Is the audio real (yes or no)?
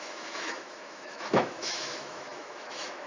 no